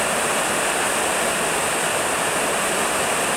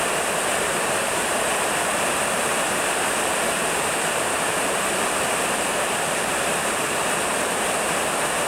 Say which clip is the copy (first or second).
second